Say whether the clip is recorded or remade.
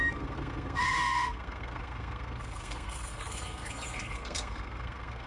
remade